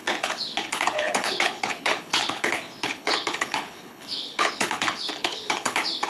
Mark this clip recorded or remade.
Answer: remade